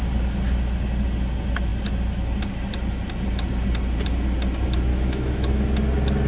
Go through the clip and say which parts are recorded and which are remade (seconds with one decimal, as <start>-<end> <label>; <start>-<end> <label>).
0.0-4.9 recorded; 4.9-5.5 remade; 5.5-6.3 recorded